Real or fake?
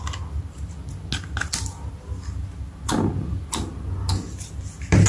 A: real